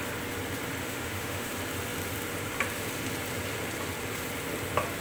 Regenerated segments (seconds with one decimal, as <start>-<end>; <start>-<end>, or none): 0.8-1.5